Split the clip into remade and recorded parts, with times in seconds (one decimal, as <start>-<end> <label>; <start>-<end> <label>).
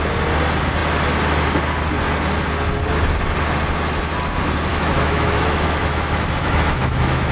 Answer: 0.0-4.7 recorded; 4.7-7.3 remade